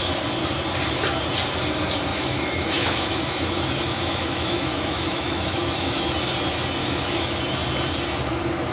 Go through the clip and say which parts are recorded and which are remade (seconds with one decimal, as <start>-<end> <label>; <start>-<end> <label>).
0.0-2.1 recorded; 2.1-6.1 remade; 6.1-6.8 recorded; 6.8-7.4 remade; 7.4-8.7 recorded